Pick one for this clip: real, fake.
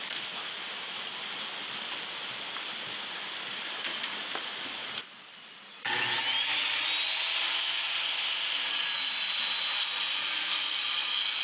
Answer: real